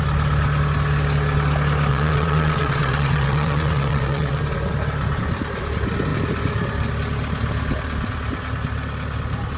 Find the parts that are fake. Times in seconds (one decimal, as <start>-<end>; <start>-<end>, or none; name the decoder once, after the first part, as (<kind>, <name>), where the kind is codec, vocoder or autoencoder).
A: 1.9-4.4 (vocoder, WaveNeXt)